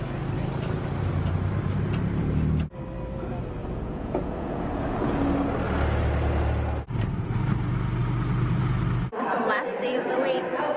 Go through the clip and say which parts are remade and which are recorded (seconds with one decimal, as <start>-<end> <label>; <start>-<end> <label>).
0.0-3.6 recorded; 3.6-5.2 remade; 5.2-10.8 recorded

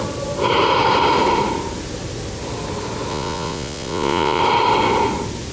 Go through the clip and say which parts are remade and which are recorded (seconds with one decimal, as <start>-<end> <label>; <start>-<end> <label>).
0.0-3.1 recorded; 3.1-4.4 remade; 4.4-5.5 recorded

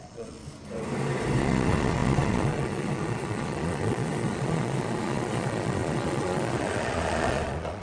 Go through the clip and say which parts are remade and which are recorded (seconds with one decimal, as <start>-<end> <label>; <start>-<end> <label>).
0.0-0.4 remade; 0.4-1.4 recorded; 1.4-7.8 remade

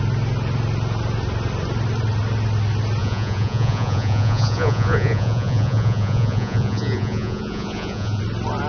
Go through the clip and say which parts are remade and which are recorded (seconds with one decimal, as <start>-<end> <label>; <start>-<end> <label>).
0.0-3.0 recorded; 3.0-8.2 remade; 8.2-8.7 recorded

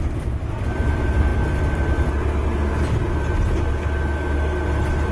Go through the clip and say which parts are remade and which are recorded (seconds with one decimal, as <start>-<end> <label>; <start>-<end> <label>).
0.0-5.1 recorded

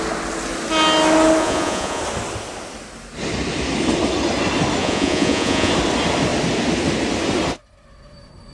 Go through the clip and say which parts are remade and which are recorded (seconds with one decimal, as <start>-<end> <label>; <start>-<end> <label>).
0.0-1.4 recorded; 1.4-2.0 remade; 2.0-4.8 recorded; 4.8-5.7 remade; 5.7-8.5 recorded

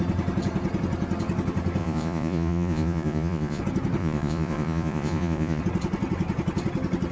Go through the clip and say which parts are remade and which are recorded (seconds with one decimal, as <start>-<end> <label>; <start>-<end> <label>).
0.0-1.8 recorded; 1.8-3.6 remade; 3.6-4.0 recorded; 4.0-5.6 remade; 5.6-7.1 recorded

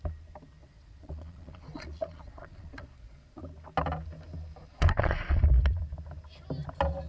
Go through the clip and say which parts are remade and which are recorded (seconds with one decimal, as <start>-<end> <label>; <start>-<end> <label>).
0.0-0.6 recorded; 0.6-3.4 remade; 3.4-4.7 recorded; 4.7-5.4 remade; 5.4-7.1 recorded